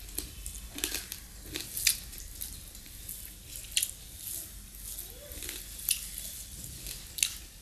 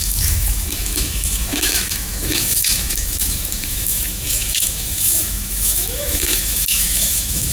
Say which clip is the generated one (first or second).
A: second